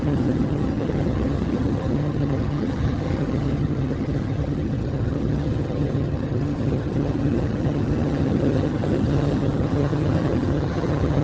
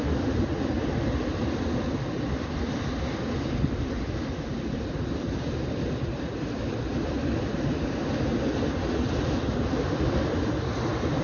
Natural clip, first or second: second